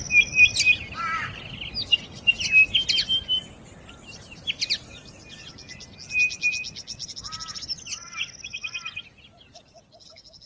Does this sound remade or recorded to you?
recorded